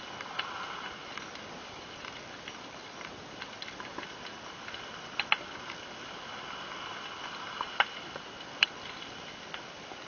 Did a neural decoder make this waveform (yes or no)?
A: no